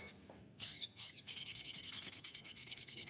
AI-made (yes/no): yes